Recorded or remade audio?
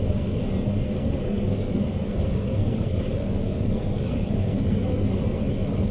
remade